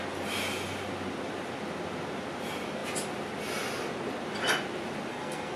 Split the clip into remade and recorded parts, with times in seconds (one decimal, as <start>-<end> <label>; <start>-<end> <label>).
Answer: 0.0-5.1 recorded; 5.1-5.6 remade